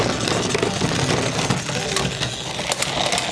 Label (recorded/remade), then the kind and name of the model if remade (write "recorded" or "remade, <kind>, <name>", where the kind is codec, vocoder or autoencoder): recorded